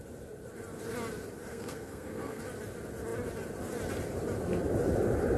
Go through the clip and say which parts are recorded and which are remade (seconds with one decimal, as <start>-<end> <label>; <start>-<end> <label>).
0.0-1.5 recorded; 1.5-2.4 remade; 2.4-5.4 recorded